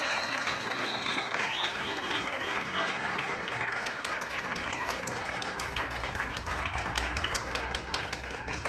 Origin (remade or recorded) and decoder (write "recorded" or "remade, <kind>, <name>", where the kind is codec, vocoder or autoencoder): remade, codec, SNAC